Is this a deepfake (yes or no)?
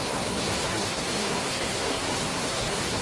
yes